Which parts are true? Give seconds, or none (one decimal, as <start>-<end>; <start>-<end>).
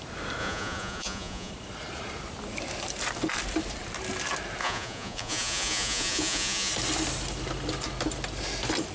0.0-0.4; 1.5-4.6; 6.7-8.9